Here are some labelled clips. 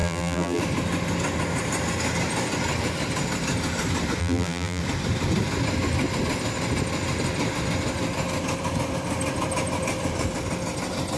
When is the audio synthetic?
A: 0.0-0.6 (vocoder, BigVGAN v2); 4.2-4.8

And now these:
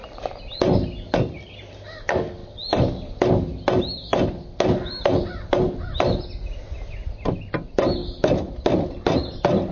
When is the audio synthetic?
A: none

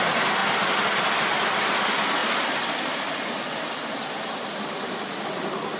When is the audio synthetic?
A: 2.2-4.8 (vocoder, BigVGAN v2)

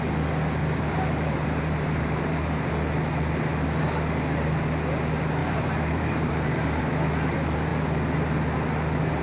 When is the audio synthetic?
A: 0.6-2.7 (vocoder, BigVGAN v2); 5.4-6.8

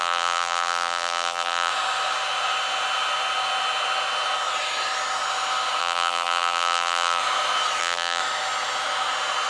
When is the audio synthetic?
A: 0.0-1.7 (vocoder, BigVGAN v2); 5.8-7.2; 7.8-8.2

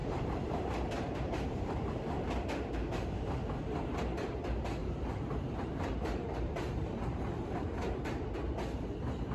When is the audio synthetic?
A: 0.0-1.9 (vocoder, BigVGAN v2); 4.8-8.3